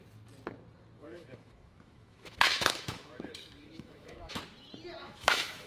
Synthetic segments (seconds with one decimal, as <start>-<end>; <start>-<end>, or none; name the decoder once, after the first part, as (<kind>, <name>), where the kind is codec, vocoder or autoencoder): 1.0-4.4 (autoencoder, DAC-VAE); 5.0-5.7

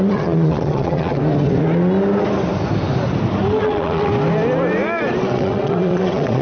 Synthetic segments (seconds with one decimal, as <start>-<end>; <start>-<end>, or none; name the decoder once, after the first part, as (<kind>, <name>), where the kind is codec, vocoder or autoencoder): 0.0-1.2 (vocoder, WaveNeXt); 3.5-4.1; 5.2-6.4

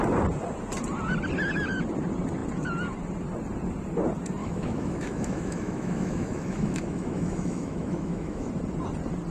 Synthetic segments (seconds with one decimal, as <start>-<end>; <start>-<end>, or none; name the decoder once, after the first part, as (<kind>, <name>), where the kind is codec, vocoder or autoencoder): 4.4-8.5 (autoencoder, DAC-VAE)

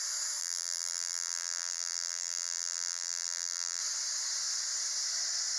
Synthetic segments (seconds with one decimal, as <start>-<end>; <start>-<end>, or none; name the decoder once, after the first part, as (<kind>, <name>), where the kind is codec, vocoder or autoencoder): 0.4-3.8 (vocoder, BigVGAN v2)

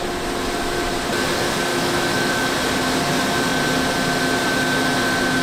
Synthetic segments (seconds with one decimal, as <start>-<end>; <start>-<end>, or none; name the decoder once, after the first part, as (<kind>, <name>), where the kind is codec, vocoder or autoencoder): 1.7-2.5 (autoencoder, DAC-VAE)

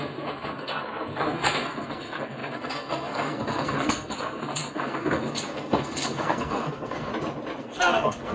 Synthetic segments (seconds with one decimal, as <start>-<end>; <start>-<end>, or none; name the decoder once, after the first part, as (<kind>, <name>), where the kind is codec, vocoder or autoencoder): 0.0-7.1 (codec, SNAC); 7.6-8.3